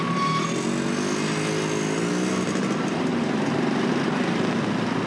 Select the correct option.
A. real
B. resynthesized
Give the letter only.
A